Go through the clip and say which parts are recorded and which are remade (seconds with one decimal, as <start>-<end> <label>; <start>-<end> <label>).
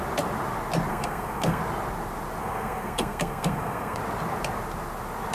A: 0.0-0.9 recorded; 0.9-1.6 remade; 1.6-2.4 recorded; 2.4-4.0 remade; 4.0-5.3 recorded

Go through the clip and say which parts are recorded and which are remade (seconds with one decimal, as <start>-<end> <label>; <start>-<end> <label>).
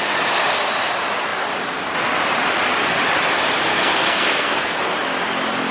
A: 0.0-3.7 recorded; 3.7-4.8 remade; 4.8-5.7 recorded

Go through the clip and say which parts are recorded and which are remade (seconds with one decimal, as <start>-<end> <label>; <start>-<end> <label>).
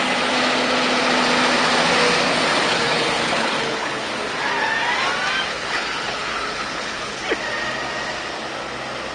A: 0.0-2.7 recorded; 2.7-4.1 remade; 4.1-5.5 recorded; 5.5-7.2 remade; 7.2-9.1 recorded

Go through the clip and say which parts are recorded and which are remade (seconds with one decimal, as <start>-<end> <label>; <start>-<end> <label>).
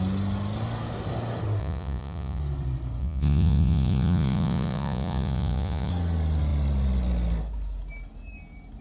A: 0.0-1.6 recorded; 1.6-2.4 remade; 2.4-3.0 recorded; 3.0-5.9 remade; 5.9-8.8 recorded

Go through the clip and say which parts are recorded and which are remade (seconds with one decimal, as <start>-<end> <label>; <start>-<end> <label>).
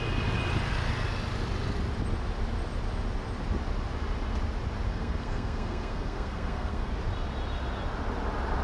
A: 0.0-4.9 recorded; 4.9-6.9 remade; 6.9-8.6 recorded